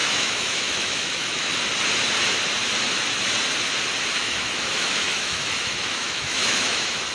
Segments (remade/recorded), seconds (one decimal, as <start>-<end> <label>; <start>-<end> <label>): 0.0-1.5 remade; 1.5-4.2 recorded; 4.2-7.1 remade